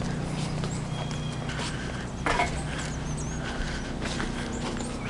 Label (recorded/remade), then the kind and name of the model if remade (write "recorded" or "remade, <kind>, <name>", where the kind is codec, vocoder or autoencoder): recorded